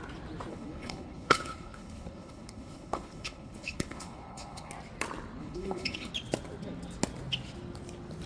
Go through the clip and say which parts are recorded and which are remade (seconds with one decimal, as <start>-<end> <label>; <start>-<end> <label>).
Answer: 0.0-0.5 recorded; 0.5-4.7 remade; 4.7-5.4 recorded; 5.4-6.1 remade; 6.1-8.3 recorded